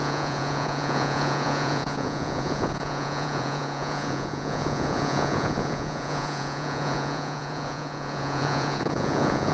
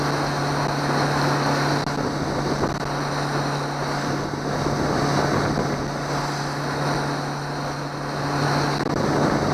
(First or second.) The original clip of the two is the second